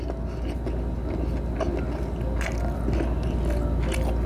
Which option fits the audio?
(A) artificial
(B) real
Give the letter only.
B